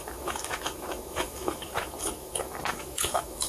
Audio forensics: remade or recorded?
remade